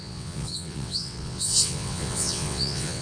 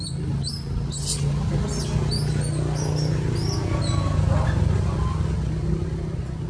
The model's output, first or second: first